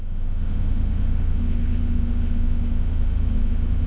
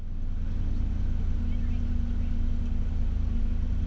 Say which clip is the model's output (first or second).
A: first